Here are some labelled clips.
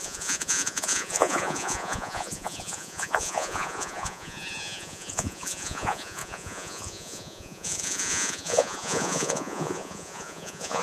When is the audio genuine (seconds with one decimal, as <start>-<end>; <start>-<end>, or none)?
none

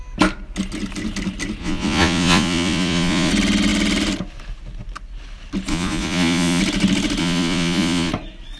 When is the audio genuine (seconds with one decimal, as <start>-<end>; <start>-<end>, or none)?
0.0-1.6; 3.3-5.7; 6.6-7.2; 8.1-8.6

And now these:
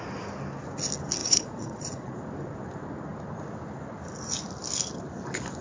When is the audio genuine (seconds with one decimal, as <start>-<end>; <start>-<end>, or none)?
0.0-1.2; 2.2-5.6

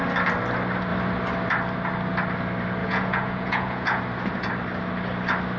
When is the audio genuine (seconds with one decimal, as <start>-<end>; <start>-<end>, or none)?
0.0-2.8; 4.0-5.6